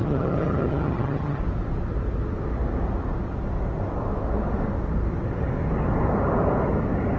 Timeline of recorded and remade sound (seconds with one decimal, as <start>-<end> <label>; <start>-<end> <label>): 0.0-1.4 remade; 1.4-7.2 recorded